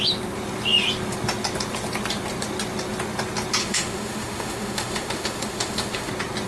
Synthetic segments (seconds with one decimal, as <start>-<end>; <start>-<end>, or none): 3.6-6.1